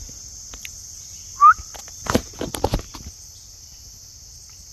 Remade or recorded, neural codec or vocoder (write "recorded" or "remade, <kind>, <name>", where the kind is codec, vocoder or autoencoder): recorded